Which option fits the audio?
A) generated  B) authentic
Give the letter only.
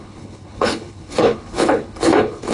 A